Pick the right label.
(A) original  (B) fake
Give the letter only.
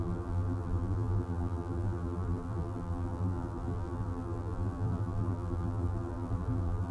B